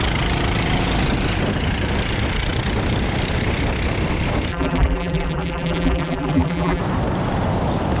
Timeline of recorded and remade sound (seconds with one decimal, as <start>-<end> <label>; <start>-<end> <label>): 0.0-4.5 recorded; 4.5-6.8 remade; 6.8-8.0 recorded